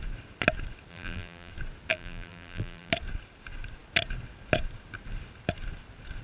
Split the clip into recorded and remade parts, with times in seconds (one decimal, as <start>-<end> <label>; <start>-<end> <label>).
0.0-0.9 recorded; 0.9-1.5 remade; 1.5-1.9 recorded; 1.9-2.9 remade; 2.9-6.2 recorded